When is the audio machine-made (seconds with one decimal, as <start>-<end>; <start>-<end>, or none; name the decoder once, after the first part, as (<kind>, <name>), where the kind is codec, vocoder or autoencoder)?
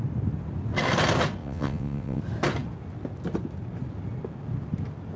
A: 1.4-2.2 (vocoder, WaveNeXt)